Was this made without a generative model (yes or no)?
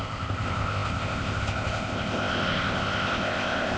no